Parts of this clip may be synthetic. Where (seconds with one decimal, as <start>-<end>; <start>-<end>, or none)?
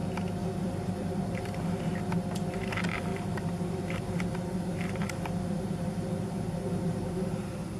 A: 0.6-1.9; 2.5-7.8